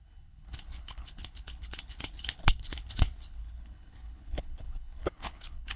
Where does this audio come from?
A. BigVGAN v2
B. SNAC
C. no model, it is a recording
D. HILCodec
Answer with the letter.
D